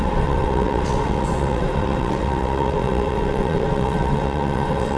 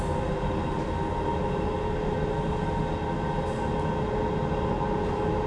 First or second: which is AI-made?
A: first